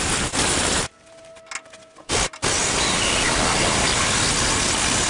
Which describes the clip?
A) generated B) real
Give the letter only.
B